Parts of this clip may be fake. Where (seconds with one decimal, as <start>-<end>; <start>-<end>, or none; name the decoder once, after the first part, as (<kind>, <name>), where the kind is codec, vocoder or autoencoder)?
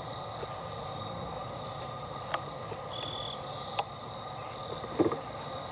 none